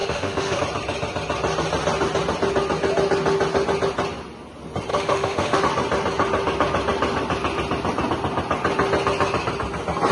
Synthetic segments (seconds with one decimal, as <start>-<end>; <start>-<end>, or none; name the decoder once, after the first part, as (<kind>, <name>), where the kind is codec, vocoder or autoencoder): 0.0-0.6 (autoencoder, DAC-VAE); 4.9-5.6